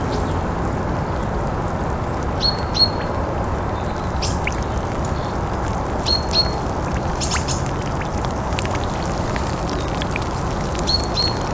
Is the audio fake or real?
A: real